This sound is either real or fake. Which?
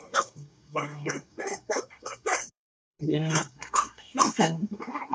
fake